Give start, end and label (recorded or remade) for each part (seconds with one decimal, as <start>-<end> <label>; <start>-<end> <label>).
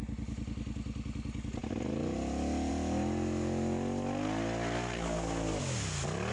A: 0.0-6.3 recorded